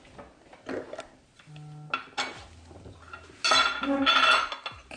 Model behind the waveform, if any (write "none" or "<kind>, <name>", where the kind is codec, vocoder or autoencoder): none